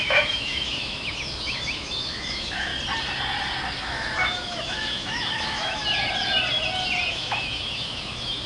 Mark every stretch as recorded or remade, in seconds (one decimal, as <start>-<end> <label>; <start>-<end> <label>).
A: 0.0-2.7 remade; 2.7-3.8 recorded; 3.8-5.8 remade; 5.8-7.1 recorded; 7.1-8.5 remade

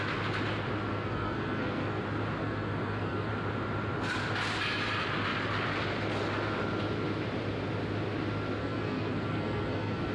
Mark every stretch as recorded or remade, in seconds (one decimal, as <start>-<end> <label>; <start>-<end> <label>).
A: 0.0-0.9 recorded; 0.9-2.0 remade; 2.0-2.4 recorded; 2.4-3.3 remade; 3.3-8.6 recorded; 8.6-10.1 remade

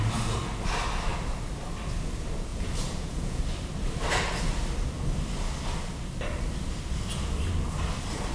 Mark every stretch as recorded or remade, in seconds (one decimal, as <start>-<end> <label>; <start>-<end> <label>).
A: 0.0-2.5 recorded; 2.5-3.4 remade; 3.4-8.3 recorded

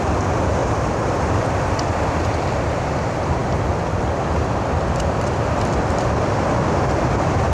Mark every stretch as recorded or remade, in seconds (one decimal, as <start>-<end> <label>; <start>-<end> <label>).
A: 0.0-0.6 remade; 0.6-2.1 recorded; 2.1-7.5 remade

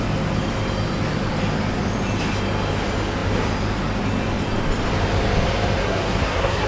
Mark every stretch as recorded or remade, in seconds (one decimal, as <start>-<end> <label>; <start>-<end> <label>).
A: 0.0-5.8 recorded; 5.8-6.7 remade

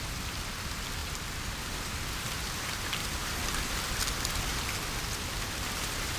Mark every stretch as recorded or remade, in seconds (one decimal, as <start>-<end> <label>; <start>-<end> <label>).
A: 0.0-1.0 recorded; 1.0-1.7 remade; 1.7-6.2 recorded

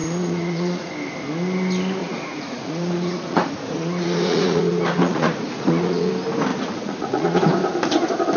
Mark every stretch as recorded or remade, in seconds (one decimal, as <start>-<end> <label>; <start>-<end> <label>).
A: 0.0-0.9 remade; 0.9-2.0 recorded; 2.0-6.1 remade; 6.1-6.5 recorded; 6.5-7.4 remade; 7.4-8.4 recorded

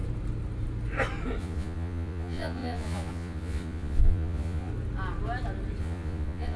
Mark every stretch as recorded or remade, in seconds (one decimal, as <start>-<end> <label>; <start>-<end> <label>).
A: 0.0-1.4 recorded; 1.4-4.7 remade; 4.7-5.8 recorded; 5.8-6.6 remade